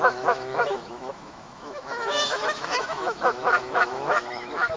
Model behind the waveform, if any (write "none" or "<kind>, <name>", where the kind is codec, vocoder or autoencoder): autoencoder, DAC-VAE